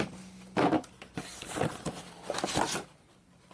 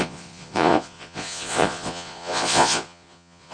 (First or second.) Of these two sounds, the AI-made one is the second